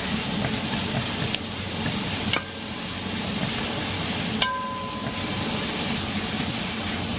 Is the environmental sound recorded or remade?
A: recorded